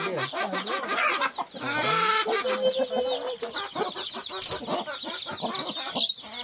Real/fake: real